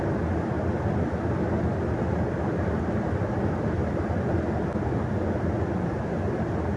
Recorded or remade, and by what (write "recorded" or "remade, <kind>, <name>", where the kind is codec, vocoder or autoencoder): recorded